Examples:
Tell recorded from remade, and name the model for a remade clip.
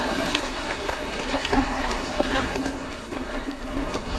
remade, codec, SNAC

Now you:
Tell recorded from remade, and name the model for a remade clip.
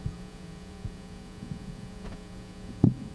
remade, vocoder, Vocos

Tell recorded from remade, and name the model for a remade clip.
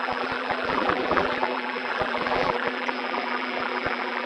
remade, vocoder, BigVGAN v2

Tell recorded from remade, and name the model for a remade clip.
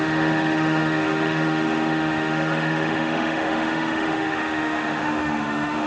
remade, autoencoder, DAC-VAE